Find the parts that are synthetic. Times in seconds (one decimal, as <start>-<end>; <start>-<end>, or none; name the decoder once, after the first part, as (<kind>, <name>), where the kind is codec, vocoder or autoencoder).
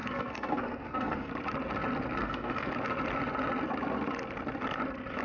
0.0-1.3 (codec, SNAC); 2.2-2.7